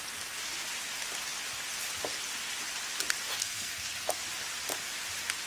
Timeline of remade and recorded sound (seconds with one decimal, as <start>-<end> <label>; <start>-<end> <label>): 0.0-3.4 recorded; 3.4-4.2 remade; 4.2-5.5 recorded